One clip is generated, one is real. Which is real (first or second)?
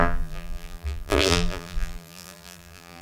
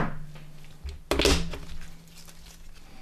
second